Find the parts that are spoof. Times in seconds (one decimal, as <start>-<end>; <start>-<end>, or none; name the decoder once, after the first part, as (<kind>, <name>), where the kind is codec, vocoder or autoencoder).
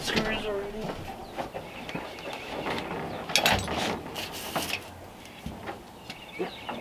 none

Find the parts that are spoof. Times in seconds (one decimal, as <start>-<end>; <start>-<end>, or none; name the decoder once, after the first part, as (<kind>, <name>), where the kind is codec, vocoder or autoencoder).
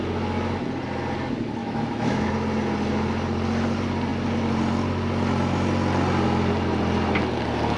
1.6-2.3 (autoencoder, DAC-VAE)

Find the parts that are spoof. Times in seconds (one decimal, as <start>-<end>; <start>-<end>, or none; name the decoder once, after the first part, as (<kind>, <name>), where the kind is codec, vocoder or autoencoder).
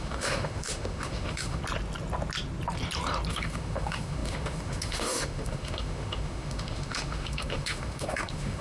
0.0-1.6 (autoencoder, DAC-VAE); 3.3-8.6